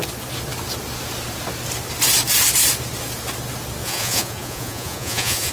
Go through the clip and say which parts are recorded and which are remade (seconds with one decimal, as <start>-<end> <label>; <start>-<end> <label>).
0.0-3.8 recorded; 3.8-5.5 remade